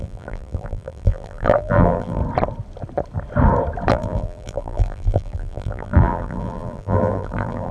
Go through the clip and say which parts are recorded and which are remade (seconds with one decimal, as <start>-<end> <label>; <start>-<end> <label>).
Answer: 0.0-2.2 remade; 2.2-3.9 recorded; 3.9-7.7 remade